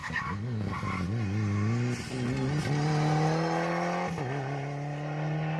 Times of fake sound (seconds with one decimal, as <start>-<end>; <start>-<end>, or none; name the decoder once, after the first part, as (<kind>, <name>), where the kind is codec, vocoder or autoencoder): 0.0-0.7 (codec, DAC)